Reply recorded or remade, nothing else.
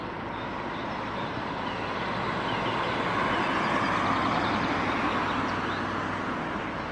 recorded